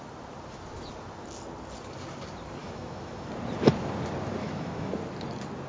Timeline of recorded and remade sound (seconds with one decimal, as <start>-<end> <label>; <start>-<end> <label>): 0.0-2.6 recorded; 2.6-3.3 remade; 3.3-4.4 recorded; 4.4-4.9 remade; 4.9-5.7 recorded